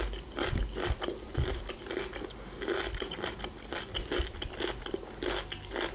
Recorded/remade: recorded